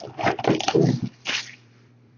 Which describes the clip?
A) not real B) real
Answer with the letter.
A